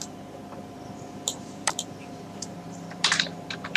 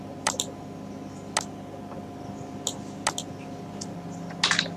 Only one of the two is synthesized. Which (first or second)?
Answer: first